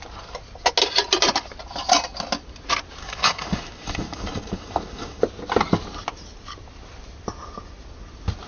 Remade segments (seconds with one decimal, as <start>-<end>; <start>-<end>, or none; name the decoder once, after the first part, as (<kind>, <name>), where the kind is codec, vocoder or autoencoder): 3.0-5.2 (codec, DAC)